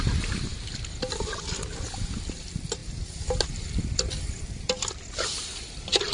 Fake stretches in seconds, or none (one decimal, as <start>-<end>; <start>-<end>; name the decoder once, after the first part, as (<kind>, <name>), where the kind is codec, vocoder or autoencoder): none